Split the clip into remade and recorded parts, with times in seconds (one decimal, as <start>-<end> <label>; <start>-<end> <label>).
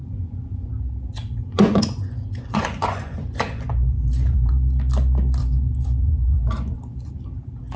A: 0.0-0.7 remade; 0.7-1.2 recorded; 1.2-4.5 remade; 4.5-5.4 recorded; 5.4-7.1 remade; 7.1-7.8 recorded